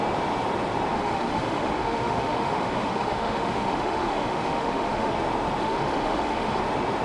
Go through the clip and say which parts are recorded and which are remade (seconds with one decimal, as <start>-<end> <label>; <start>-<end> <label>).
0.0-0.9 recorded; 0.9-5.1 remade; 5.1-5.6 recorded; 5.6-6.6 remade; 6.6-7.0 recorded